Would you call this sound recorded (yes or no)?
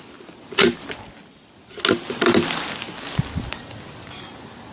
yes